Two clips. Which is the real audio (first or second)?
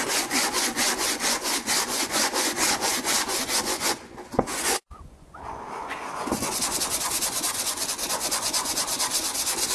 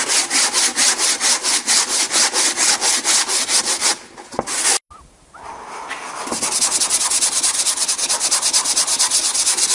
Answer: second